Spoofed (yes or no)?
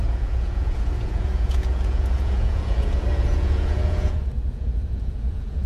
yes